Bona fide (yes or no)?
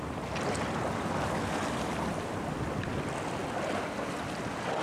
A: yes